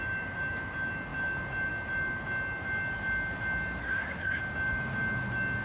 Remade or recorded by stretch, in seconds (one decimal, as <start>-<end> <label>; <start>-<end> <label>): 0.0-3.8 recorded; 3.8-4.4 remade; 4.4-5.6 recorded

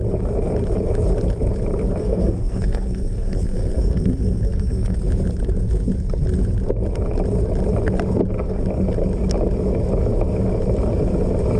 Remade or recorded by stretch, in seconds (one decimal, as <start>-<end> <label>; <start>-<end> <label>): 0.0-2.0 recorded; 2.0-5.0 remade; 5.0-11.6 recorded

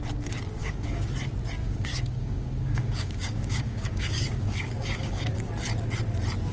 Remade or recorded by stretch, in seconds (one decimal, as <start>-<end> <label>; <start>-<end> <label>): 0.0-0.6 recorded; 0.6-1.1 remade; 1.1-1.6 recorded; 1.6-5.5 remade; 5.5-6.5 recorded

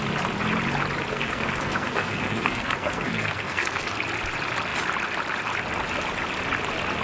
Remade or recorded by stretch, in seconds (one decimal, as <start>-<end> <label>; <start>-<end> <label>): 0.0-1.1 recorded; 1.1-4.0 remade; 4.0-7.0 recorded

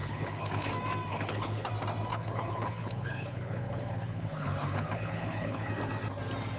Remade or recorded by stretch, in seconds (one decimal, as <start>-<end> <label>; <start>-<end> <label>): 0.0-0.7 remade; 0.7-1.1 recorded; 1.1-1.7 remade; 1.7-2.1 recorded; 2.1-5.7 remade; 5.7-6.6 recorded

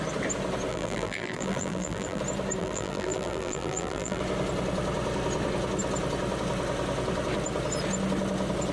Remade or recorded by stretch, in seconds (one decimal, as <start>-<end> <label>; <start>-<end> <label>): 0.0-0.7 recorded; 0.7-2.2 remade; 2.2-2.6 recorded; 2.6-4.2 remade; 4.2-8.7 recorded

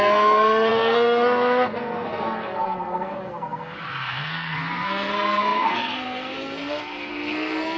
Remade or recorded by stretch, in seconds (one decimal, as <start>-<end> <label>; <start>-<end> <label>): 0.0-7.8 remade

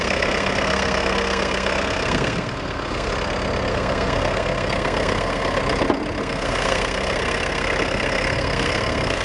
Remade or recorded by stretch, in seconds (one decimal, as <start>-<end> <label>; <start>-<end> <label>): 0.0-3.1 remade; 3.1-3.7 recorded; 3.7-5.6 remade; 5.6-6.2 recorded; 6.2-9.2 remade